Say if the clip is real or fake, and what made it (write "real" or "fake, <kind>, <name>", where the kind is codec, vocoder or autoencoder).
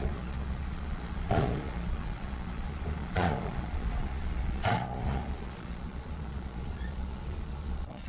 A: fake, vocoder, Vocos